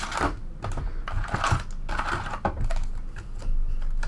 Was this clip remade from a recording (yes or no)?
no